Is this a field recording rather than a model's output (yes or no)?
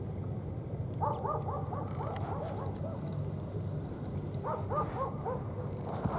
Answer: yes